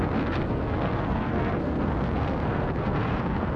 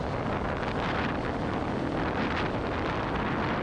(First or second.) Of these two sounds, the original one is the second